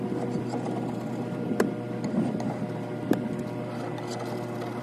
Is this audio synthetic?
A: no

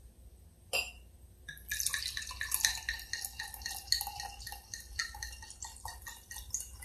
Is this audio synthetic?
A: no